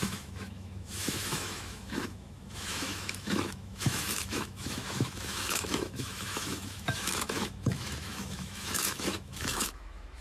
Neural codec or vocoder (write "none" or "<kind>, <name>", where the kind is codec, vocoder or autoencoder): autoencoder, DAC-VAE